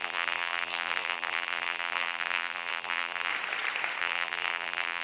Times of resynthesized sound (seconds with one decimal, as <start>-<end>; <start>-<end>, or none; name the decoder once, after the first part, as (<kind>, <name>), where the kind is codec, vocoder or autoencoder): 0.0-3.3 (vocoder, BigVGAN v2); 4.0-5.0